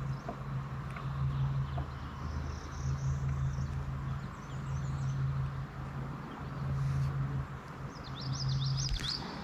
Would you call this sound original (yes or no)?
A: yes